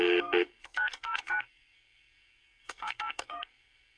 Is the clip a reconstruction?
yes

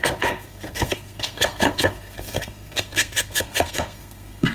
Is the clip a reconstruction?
yes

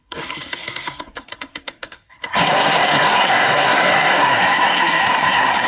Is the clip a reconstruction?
yes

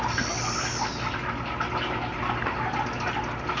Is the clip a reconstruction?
no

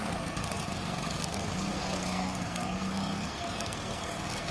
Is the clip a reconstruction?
yes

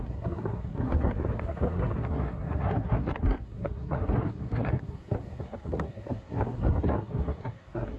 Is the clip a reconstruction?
yes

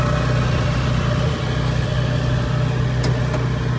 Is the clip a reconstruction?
no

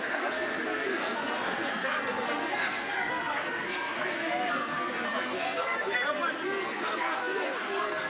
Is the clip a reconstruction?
yes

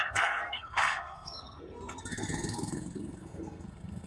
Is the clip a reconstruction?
yes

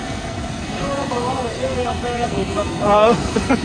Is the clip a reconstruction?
yes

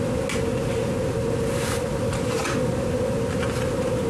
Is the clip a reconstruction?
no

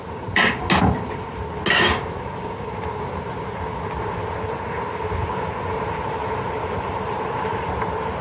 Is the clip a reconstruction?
no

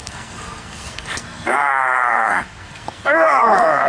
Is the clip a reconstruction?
yes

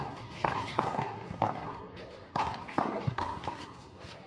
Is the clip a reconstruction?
yes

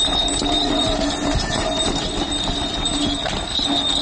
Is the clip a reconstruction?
no